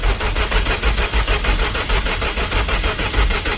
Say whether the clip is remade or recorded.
remade